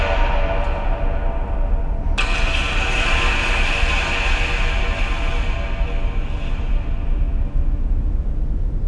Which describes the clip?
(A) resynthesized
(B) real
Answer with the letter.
B